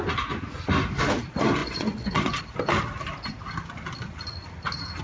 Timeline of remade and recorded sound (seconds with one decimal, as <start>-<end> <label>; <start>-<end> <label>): 0.0-1.6 recorded; 1.6-2.4 remade; 2.4-5.0 recorded